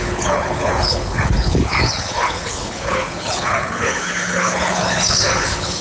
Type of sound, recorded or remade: remade